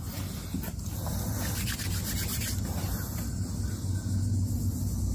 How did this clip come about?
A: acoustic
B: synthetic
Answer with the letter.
A